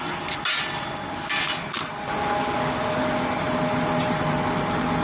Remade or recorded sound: recorded